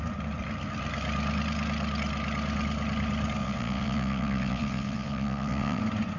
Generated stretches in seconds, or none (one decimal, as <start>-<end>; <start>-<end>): 3.4-5.8